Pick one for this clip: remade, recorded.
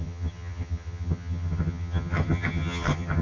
remade